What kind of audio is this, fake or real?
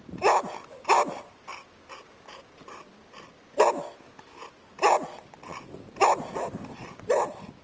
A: real